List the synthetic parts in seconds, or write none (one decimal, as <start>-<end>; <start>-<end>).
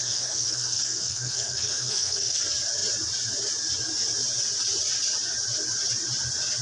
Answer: 0.0-2.4